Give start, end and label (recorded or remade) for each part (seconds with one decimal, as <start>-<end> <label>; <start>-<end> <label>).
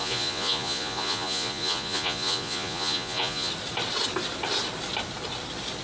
0.0-3.5 remade; 3.5-5.8 recorded